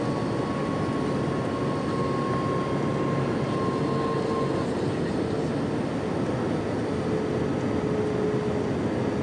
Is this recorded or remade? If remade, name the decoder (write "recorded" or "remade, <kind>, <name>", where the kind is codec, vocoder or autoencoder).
recorded